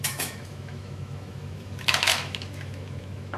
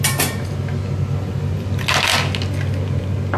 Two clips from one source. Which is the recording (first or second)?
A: second